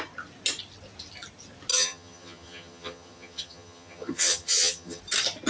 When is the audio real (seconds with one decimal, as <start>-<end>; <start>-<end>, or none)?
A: 0.0-1.7; 5.0-5.5